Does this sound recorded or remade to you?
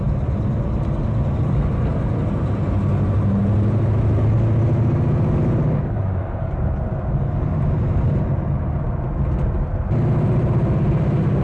recorded